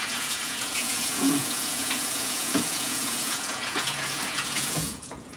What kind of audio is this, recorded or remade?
remade